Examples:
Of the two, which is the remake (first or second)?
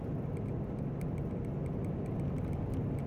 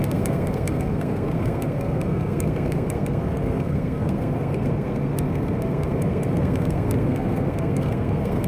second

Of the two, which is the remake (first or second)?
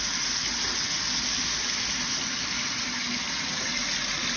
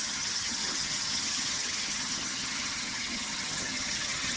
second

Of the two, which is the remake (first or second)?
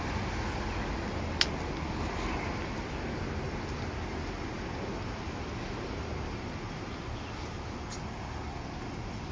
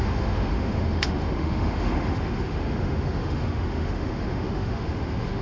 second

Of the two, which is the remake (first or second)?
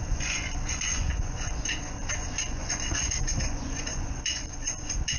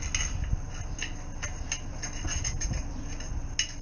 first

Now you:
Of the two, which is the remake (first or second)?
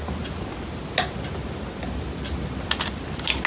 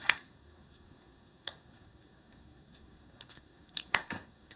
second